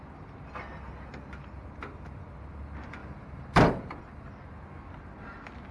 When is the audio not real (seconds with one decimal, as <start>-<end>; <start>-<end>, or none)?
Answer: 3.0-4.0